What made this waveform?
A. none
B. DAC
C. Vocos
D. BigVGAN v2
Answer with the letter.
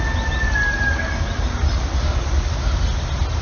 A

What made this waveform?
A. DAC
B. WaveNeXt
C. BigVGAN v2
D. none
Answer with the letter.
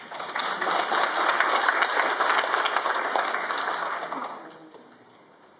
D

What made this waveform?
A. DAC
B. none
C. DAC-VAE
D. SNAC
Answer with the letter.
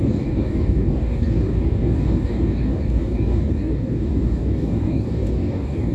A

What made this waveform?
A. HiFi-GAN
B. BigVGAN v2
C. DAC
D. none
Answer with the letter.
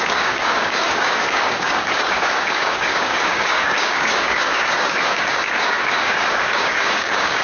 C